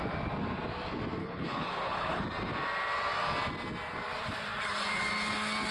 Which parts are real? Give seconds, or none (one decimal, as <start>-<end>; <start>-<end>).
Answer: 0.0-1.2; 2.2-5.7